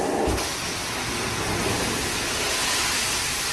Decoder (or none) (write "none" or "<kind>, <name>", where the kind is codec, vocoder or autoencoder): none